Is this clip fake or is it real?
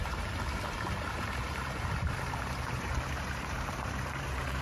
fake